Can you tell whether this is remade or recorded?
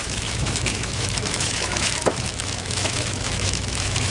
remade